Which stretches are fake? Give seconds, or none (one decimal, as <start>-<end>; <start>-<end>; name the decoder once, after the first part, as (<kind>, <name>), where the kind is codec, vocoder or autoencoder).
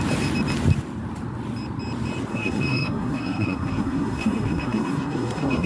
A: 2.3-5.7 (codec, SNAC)